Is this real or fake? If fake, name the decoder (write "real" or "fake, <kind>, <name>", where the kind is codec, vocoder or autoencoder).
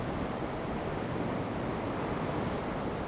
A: real